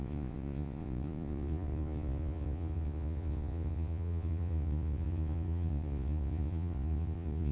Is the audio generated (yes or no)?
yes